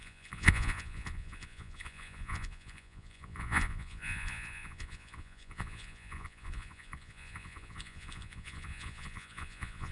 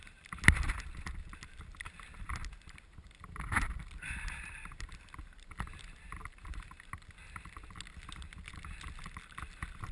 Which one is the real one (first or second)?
second